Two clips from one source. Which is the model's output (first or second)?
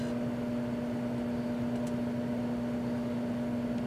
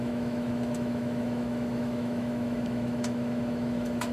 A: second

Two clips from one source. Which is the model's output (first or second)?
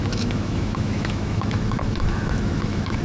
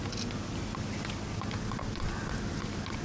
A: first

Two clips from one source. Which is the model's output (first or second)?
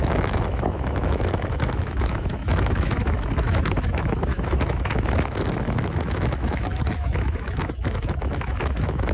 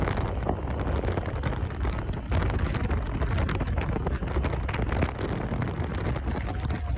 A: first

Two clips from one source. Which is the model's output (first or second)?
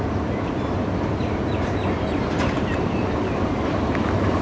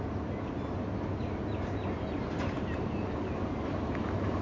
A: first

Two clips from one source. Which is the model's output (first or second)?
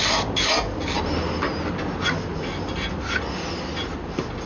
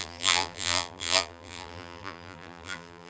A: second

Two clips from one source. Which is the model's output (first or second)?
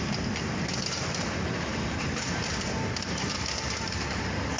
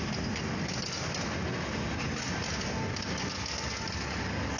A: first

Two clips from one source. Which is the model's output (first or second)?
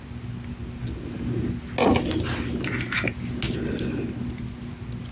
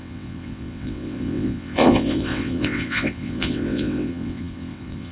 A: second